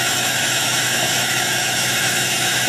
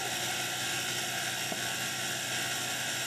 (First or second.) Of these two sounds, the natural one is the second